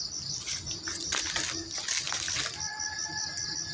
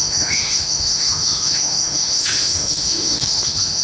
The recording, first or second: first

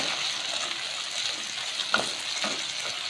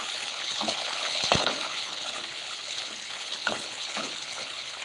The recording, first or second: first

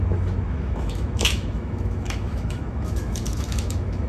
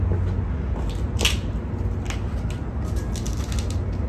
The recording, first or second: second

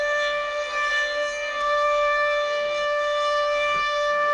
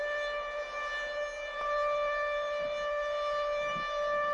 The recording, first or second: second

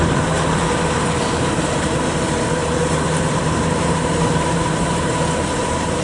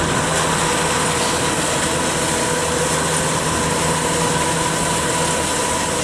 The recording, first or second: second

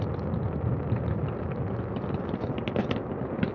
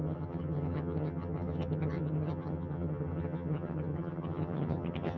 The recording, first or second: first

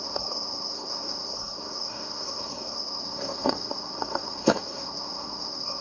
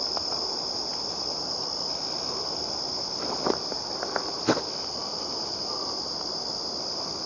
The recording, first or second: second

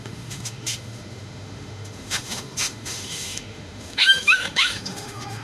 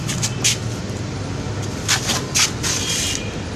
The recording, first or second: second